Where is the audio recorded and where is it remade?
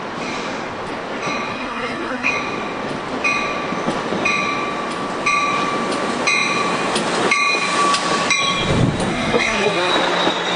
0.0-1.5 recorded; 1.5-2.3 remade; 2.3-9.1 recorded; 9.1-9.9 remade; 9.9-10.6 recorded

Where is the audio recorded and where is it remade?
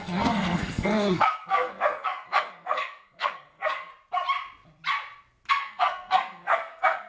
0.0-3.9 remade; 3.9-5.5 recorded; 5.5-7.1 remade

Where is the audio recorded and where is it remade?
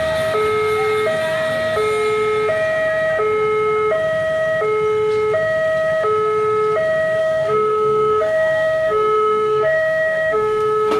0.0-7.2 recorded; 7.2-11.0 remade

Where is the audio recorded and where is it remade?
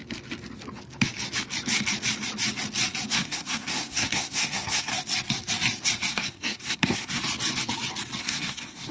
0.0-3.1 recorded; 3.1-4.9 remade; 4.9-6.1 recorded; 6.1-7.2 remade; 7.2-8.2 recorded; 8.2-8.9 remade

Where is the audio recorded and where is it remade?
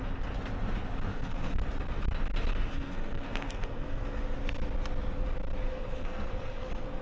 0.0-1.1 recorded; 1.1-1.7 remade; 1.7-2.7 recorded; 2.7-4.2 remade; 4.2-5.7 recorded; 5.7-7.0 remade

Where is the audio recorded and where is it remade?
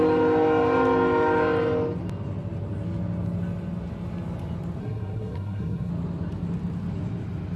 0.0-4.8 recorded; 4.8-5.9 remade; 5.9-7.6 recorded